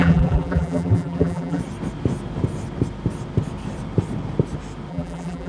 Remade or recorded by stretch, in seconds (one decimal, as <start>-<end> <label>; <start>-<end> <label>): 0.0-1.6 remade; 1.6-4.9 recorded; 4.9-5.5 remade